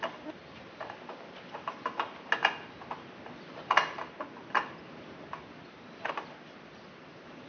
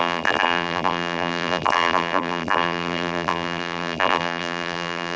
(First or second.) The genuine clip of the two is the first